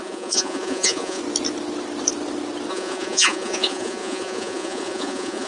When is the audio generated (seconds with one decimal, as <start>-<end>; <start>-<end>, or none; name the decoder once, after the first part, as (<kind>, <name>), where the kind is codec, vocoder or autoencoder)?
0.0-1.2 (vocoder, Vocos); 2.7-5.5